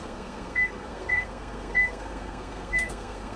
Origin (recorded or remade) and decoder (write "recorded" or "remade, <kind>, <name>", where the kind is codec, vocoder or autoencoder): remade, codec, SNAC